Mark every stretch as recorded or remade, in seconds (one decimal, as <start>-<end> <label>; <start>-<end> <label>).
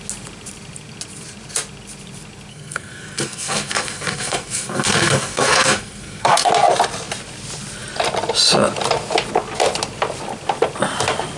0.0-2.5 recorded; 2.5-6.5 remade; 6.5-11.4 recorded